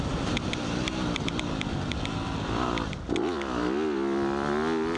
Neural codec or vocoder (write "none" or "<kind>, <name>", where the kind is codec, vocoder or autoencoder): none